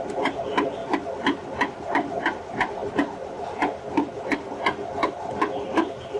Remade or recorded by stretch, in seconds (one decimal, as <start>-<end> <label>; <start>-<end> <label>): 0.0-6.2 recorded